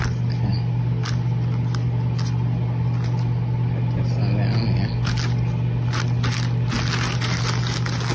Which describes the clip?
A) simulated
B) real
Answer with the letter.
B